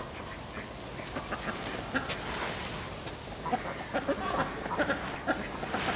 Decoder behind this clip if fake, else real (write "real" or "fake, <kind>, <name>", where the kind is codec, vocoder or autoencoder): real